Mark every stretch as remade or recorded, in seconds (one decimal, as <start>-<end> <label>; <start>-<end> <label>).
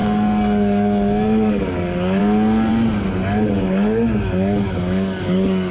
0.0-2.7 remade; 2.7-3.5 recorded; 3.5-5.7 remade